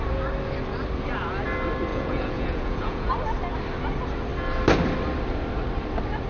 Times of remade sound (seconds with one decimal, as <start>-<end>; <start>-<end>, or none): 1.9-3.1